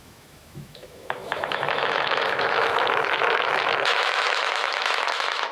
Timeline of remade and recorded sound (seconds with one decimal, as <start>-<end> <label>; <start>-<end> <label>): 0.0-5.5 remade